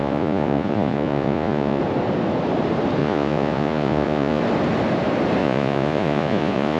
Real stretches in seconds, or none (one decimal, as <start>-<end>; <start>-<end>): 1.8-3.0; 4.4-5.4